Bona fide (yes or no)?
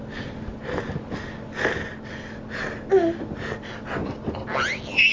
yes